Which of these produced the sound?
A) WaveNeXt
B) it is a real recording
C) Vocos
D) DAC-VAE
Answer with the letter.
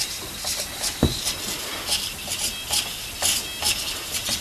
B